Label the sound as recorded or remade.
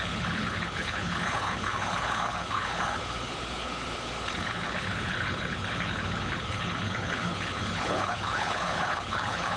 remade